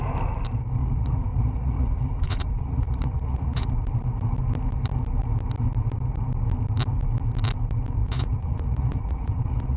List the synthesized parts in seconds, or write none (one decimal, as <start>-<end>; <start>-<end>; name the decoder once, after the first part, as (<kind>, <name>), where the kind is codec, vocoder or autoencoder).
0.8-3.7 (vocoder, Vocos); 8.0-9.8